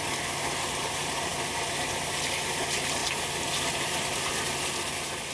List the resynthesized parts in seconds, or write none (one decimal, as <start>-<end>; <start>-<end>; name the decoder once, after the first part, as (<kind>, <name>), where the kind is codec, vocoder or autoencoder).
1.3-1.8 (vocoder, BigVGAN v2); 3.0-4.3